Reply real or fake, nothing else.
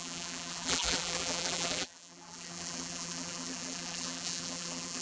fake